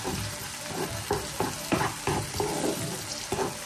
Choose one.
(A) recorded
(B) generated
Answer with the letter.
A